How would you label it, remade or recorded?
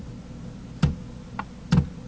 recorded